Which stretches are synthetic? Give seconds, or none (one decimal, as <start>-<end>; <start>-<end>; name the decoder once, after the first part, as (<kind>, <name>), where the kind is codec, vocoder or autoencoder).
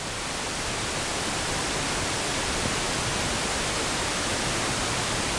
none